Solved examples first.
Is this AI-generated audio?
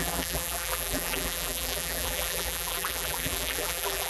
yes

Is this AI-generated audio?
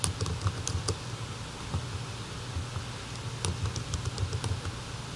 no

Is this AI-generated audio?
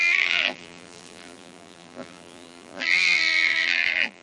yes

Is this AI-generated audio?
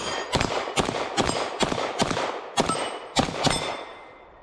no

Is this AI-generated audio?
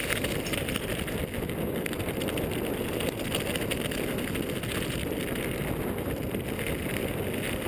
no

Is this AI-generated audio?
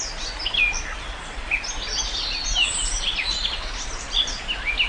no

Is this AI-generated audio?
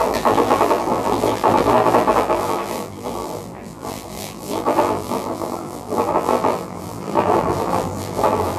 yes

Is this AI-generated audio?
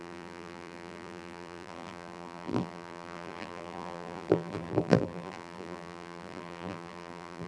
yes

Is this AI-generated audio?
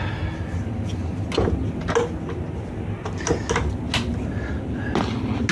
no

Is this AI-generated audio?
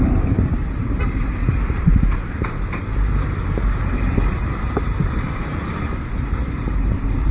yes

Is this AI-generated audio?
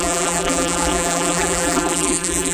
yes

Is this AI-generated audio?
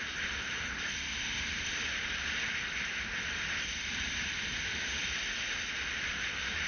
yes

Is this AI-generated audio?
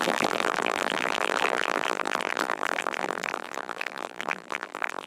yes